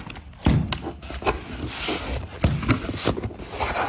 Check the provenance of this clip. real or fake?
real